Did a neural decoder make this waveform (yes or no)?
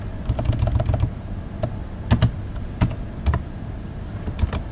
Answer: no